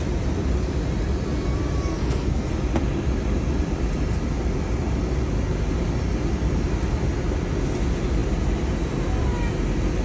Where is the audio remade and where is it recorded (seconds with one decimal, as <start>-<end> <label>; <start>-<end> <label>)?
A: 0.0-1.9 recorded; 1.9-2.5 remade; 2.5-10.0 recorded